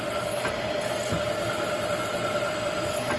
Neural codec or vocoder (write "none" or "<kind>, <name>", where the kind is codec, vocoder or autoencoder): none